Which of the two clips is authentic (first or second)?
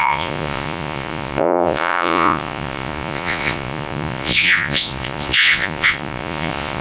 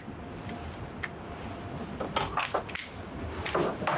second